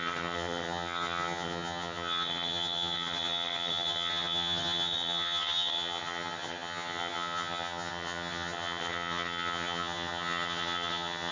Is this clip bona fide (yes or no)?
no